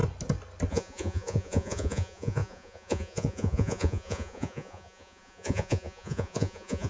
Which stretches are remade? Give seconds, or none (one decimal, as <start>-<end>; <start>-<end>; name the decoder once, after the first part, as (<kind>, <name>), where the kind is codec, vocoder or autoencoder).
0.7-6.9 (vocoder, Vocos)